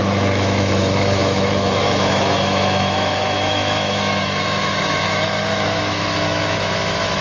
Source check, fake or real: fake